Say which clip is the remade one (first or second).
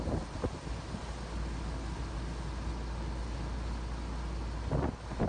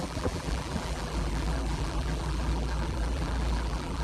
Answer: second